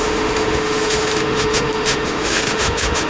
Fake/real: fake